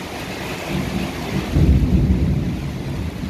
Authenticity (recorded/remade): recorded